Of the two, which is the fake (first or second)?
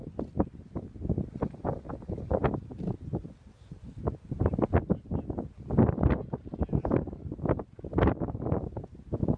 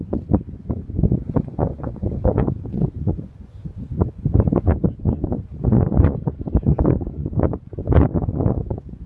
second